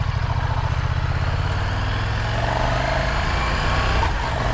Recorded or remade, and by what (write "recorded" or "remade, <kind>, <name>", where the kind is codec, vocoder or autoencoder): recorded